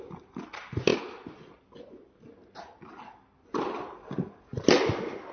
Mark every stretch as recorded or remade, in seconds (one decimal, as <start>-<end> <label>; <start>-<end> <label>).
0.0-5.3 recorded